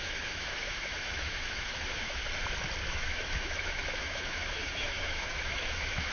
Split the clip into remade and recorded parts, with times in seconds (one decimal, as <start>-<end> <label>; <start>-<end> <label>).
0.0-2.2 remade; 2.2-2.8 recorded; 2.8-6.1 remade